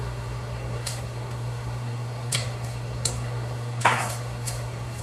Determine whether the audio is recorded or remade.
remade